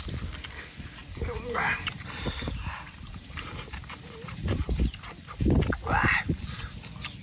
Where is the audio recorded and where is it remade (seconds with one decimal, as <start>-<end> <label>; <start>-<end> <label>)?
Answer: 0.0-1.0 recorded; 1.0-5.3 remade; 5.3-7.2 recorded